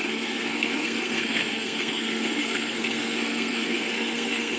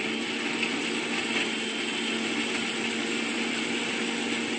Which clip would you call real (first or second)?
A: second